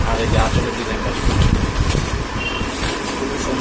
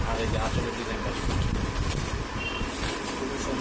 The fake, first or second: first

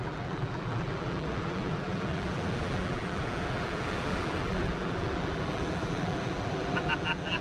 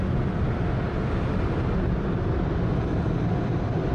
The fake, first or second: first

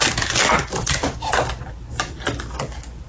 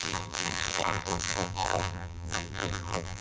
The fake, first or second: second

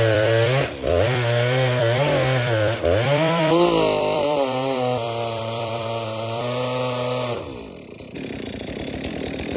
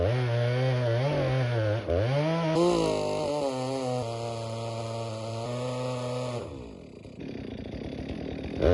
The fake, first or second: first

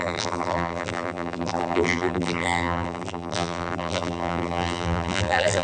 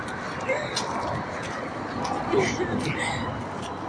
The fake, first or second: first